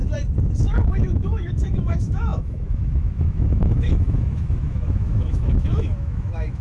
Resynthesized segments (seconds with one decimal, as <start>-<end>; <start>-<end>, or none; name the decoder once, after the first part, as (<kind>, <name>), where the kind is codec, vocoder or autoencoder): 0.6-6.6 (autoencoder, DAC-VAE)